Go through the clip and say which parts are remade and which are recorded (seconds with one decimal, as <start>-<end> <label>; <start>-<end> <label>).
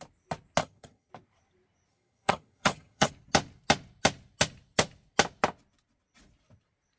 0.0-0.6 recorded; 0.6-1.1 remade; 1.1-1.9 recorded; 1.9-3.1 remade; 3.1-7.0 recorded